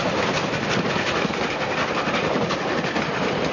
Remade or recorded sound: recorded